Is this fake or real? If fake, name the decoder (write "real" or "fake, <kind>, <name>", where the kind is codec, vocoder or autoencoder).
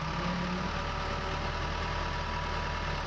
real